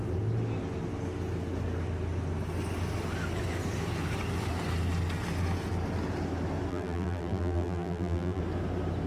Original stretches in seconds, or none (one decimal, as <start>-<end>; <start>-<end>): 0.0-6.7; 8.4-9.1